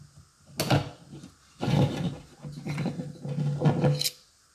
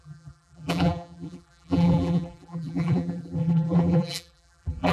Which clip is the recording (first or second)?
first